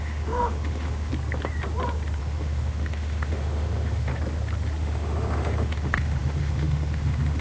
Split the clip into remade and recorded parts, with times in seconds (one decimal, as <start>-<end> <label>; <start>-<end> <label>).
0.0-1.1 remade; 1.1-2.2 recorded; 2.2-4.1 remade; 4.1-4.8 recorded; 4.8-7.4 remade